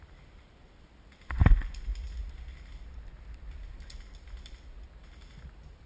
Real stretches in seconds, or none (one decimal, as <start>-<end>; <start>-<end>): 0.0-5.9